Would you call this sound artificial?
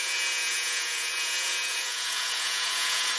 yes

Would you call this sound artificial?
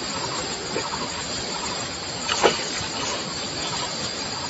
no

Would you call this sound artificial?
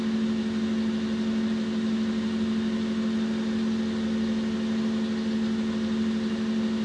no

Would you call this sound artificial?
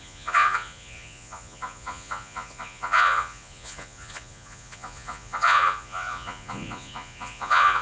yes